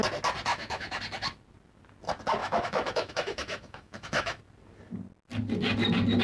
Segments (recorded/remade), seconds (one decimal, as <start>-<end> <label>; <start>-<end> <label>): 0.0-0.5 recorded; 0.5-1.0 remade; 1.0-2.4 recorded; 2.4-4.4 remade; 4.4-6.2 recorded